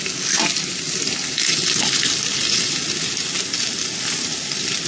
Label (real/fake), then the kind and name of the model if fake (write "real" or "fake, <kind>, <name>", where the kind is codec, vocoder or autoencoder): real